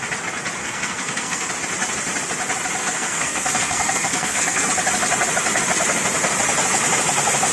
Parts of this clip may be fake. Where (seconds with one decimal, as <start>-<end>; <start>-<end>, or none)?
0.6-1.5; 2.8-4.7